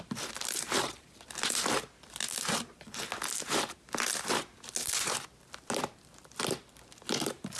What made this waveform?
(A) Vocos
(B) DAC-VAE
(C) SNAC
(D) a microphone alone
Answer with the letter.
D